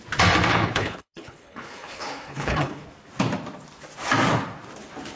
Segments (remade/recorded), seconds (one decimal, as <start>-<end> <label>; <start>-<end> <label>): 0.0-0.5 recorded; 0.5-2.9 remade; 2.9-5.2 recorded